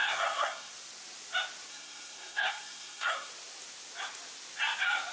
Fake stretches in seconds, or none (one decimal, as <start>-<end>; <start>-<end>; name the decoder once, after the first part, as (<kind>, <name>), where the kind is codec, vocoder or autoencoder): 0.0-0.7 (codec, SNAC); 1.7-3.3